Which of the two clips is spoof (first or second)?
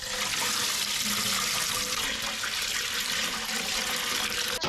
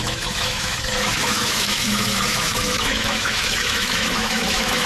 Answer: second